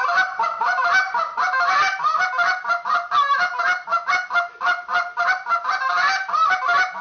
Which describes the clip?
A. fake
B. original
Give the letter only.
B